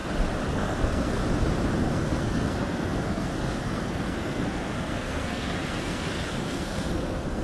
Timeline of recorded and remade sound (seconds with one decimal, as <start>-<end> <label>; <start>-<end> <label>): 0.0-0.5 recorded; 0.5-1.2 remade; 1.2-1.8 recorded; 1.8-7.4 remade